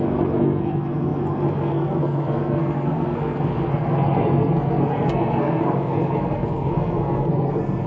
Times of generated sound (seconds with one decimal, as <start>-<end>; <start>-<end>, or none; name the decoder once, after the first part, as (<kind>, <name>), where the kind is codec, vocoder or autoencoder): 0.0-7.9 (codec, SNAC)